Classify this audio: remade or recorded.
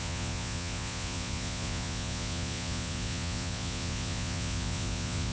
remade